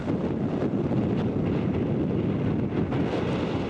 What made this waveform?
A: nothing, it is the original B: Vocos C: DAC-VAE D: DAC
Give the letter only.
A